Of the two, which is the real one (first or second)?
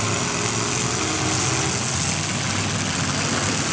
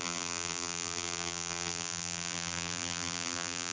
first